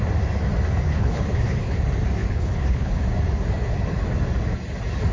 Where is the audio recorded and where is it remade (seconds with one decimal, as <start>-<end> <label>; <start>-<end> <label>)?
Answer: 0.0-0.9 recorded; 0.9-1.8 remade; 1.8-2.2 recorded; 2.2-3.0 remade; 3.0-5.1 recorded